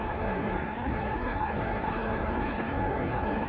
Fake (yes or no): yes